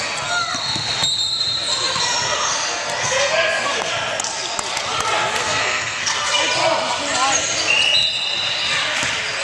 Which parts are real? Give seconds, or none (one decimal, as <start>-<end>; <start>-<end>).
0.0-3.0; 3.9-5.4; 6.4-9.4